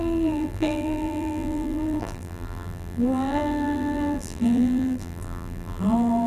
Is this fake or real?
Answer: fake